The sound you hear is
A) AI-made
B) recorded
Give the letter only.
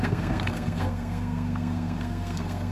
A